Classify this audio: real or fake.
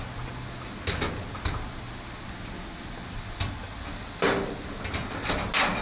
real